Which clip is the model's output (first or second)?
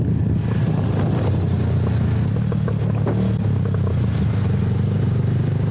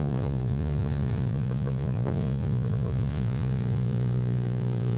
second